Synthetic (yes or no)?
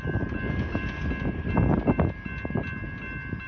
no